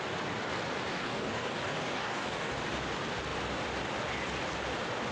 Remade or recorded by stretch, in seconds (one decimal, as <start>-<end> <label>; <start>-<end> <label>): 0.0-0.9 recorded; 0.9-2.5 remade; 2.5-5.1 recorded